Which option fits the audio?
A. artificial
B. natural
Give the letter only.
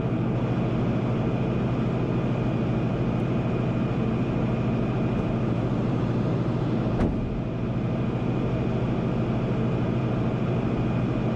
B